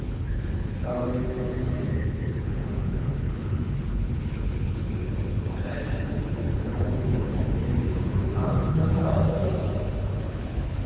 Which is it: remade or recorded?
remade